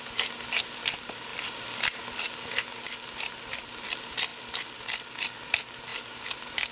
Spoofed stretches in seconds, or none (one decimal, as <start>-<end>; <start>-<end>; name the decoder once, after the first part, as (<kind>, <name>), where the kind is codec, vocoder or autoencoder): 1.3-1.8 (vocoder, BigVGAN v2); 4.3-5.1